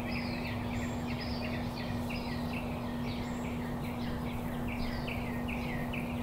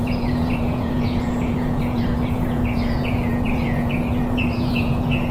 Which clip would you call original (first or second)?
first